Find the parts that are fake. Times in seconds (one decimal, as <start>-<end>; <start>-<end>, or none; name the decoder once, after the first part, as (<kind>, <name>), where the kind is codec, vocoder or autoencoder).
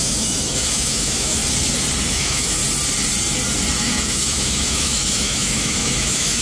0.0-1.4 (autoencoder, DAC-VAE); 2.1-2.6; 3.8-6.4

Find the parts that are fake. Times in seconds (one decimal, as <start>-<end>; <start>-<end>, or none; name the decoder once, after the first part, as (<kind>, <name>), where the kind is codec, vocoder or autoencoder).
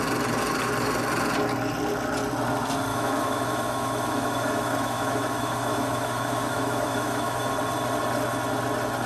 2.9-7.5 (autoencoder, DAC-VAE)